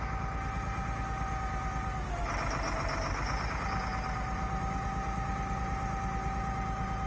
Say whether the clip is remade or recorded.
recorded